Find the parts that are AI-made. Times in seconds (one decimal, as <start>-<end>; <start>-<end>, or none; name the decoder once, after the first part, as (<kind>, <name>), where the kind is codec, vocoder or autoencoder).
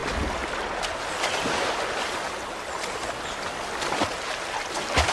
none